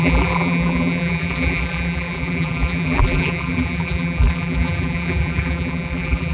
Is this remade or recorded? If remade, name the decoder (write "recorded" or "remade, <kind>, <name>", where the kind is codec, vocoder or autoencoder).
remade, vocoder, BigVGAN v2